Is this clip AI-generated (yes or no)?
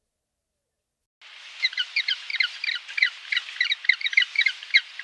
no